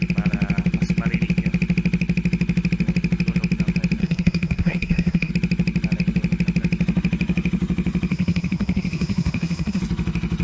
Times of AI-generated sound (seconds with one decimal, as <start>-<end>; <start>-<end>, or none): 4.0-5.3; 8.1-9.8